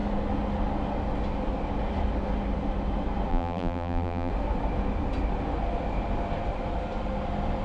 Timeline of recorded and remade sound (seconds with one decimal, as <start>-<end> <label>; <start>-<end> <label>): 0.0-3.3 recorded; 3.3-4.3 remade; 4.3-7.6 recorded